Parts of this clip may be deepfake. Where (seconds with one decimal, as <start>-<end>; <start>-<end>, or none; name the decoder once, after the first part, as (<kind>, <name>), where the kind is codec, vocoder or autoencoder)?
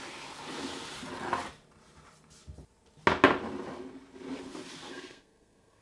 4.9-5.8 (codec, SNAC)